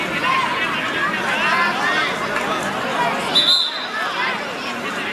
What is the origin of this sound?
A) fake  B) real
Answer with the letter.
B